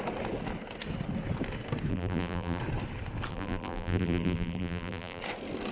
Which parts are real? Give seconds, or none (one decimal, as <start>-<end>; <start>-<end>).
0.0-1.9; 2.6-3.3; 5.2-5.7